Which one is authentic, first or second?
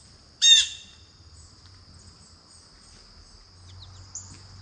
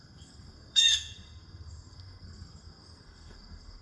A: first